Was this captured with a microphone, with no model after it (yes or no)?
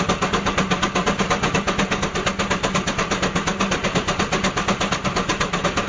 yes